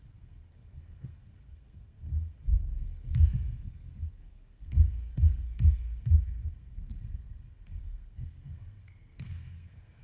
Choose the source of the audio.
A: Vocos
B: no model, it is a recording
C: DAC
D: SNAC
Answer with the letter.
D